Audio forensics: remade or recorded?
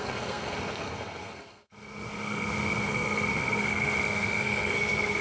remade